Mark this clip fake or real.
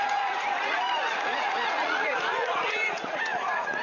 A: fake